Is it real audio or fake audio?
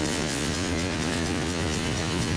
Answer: fake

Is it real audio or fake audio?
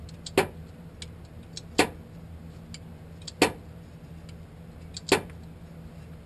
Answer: real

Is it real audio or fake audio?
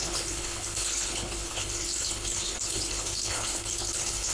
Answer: fake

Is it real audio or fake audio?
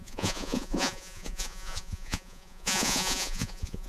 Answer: fake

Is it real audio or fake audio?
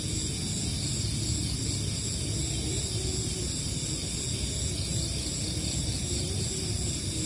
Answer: real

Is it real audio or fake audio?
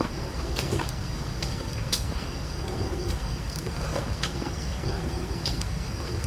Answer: fake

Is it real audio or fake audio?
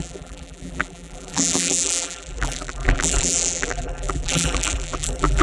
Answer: fake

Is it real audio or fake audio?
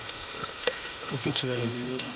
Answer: fake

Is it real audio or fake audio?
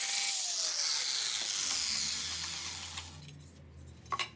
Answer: real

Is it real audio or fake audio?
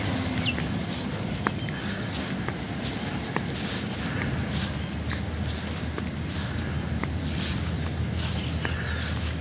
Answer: real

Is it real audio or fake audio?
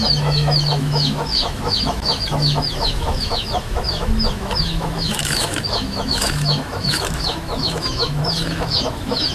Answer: fake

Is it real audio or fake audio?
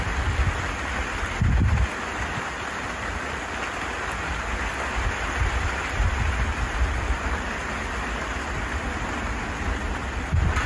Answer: real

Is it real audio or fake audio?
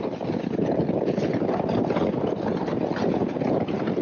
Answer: real